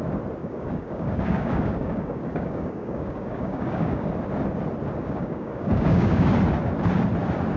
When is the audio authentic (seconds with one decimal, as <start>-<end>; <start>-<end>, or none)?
0.0-0.4; 4.1-5.0; 6.3-7.6